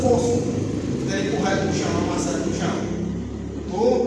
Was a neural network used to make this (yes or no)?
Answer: no